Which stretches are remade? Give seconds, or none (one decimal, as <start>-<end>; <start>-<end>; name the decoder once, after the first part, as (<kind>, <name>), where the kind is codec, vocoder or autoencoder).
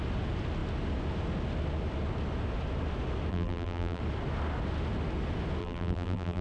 3.3-4.0 (vocoder, BigVGAN v2); 5.6-6.4